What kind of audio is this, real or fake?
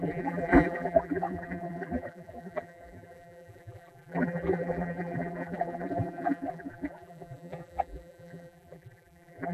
fake